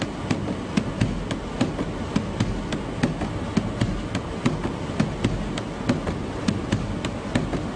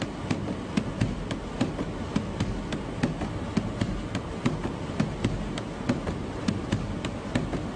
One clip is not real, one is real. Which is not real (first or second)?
second